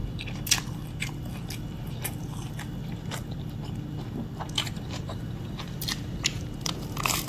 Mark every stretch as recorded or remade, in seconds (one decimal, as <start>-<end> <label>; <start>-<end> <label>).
0.0-4.4 recorded; 4.4-7.3 remade